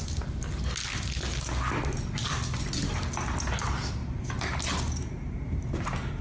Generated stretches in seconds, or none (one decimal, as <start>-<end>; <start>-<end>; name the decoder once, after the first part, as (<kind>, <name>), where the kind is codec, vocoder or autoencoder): none